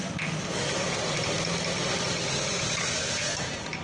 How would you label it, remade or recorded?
recorded